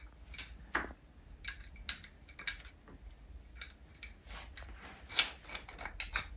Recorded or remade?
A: recorded